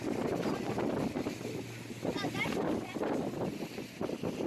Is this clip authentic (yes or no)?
yes